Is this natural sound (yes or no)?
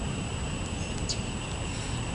yes